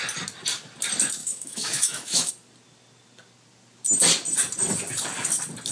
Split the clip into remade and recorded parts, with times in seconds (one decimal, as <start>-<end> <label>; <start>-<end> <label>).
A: 0.0-1.2 recorded; 1.2-2.3 remade; 2.3-5.7 recorded